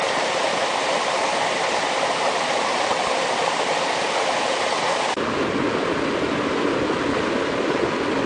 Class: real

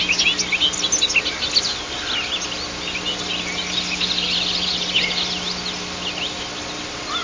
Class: real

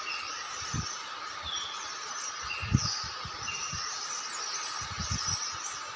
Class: real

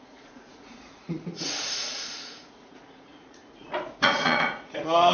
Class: fake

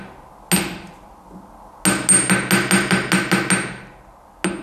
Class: real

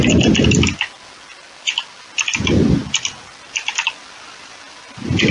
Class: real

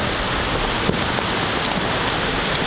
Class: real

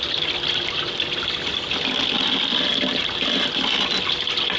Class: real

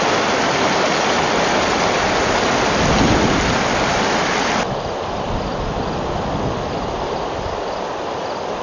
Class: real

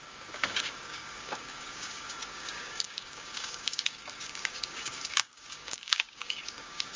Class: fake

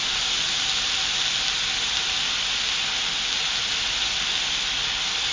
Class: real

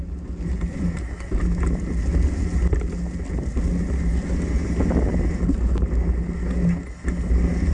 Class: real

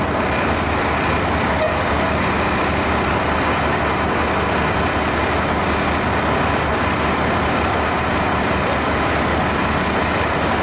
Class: real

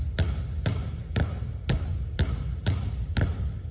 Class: real